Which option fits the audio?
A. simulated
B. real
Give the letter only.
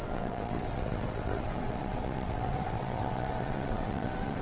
A